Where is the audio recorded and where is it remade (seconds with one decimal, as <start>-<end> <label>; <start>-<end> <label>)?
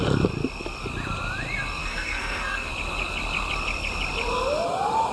0.0-1.8 recorded; 1.8-2.7 remade; 2.7-5.1 recorded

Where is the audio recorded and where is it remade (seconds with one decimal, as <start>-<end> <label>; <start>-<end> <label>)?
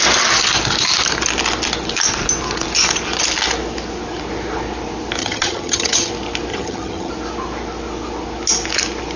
0.0-5.2 recorded; 5.2-6.1 remade; 6.1-6.5 recorded; 6.5-7.1 remade; 7.1-9.2 recorded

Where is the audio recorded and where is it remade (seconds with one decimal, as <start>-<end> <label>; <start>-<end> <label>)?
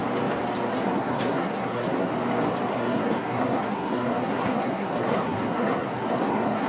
0.0-0.7 recorded; 0.7-2.1 remade; 2.1-2.7 recorded; 2.7-6.7 remade